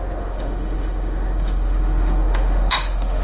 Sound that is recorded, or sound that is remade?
remade